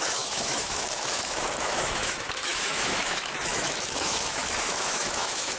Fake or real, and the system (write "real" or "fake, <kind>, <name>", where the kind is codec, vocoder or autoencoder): fake, autoencoder, DAC-VAE